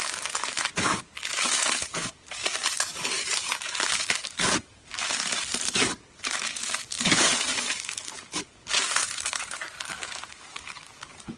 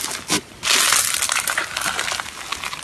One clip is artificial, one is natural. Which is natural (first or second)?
second